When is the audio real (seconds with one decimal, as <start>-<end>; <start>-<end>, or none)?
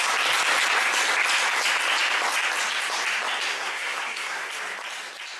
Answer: 0.0-3.5; 4.5-5.4